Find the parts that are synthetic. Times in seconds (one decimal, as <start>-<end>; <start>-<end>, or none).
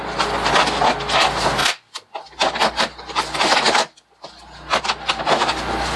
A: none